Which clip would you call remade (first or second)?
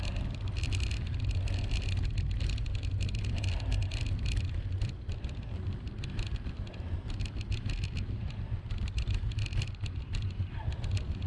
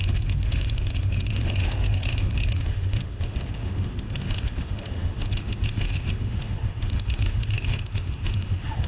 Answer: second